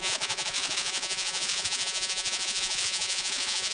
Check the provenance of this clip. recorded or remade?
remade